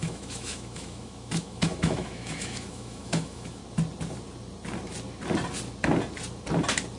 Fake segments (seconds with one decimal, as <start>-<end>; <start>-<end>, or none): 0.0-3.6